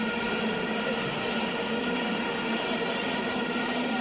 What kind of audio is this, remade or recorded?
recorded